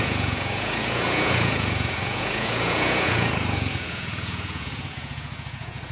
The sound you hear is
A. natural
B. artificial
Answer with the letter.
B